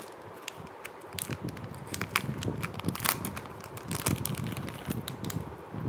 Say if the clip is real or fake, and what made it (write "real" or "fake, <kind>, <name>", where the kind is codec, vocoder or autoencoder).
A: real